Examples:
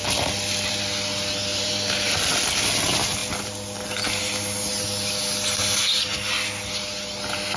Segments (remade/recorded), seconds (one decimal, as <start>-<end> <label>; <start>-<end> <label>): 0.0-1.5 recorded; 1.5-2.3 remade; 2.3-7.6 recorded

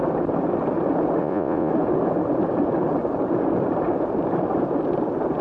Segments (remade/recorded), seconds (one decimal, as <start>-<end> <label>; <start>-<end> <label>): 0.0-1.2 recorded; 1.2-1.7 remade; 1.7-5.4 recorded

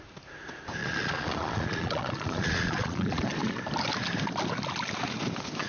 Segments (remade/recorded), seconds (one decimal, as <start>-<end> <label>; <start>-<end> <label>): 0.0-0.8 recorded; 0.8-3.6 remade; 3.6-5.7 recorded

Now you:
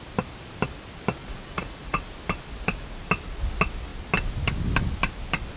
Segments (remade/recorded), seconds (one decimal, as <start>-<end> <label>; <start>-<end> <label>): 0.0-1.2 recorded; 1.2-2.0 remade; 2.0-5.6 recorded

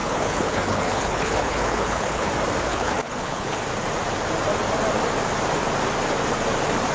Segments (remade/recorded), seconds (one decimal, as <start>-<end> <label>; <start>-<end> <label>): 0.0-2.3 remade; 2.3-2.7 recorded; 2.7-3.6 remade; 3.6-6.9 recorded

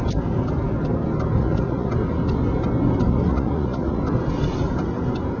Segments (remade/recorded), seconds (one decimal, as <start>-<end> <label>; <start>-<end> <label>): 0.0-1.4 recorded; 1.4-1.9 remade; 1.9-3.1 recorded; 3.1-4.0 remade; 4.0-5.4 recorded

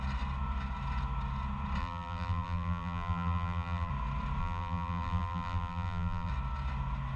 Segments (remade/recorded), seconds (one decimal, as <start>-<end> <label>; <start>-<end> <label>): 0.0-1.8 recorded; 1.8-3.9 remade; 3.9-4.4 recorded; 4.4-6.3 remade; 6.3-7.2 recorded